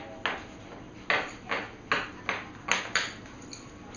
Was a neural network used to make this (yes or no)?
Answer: no